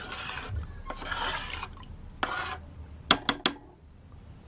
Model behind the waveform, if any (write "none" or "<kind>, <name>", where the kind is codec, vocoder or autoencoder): none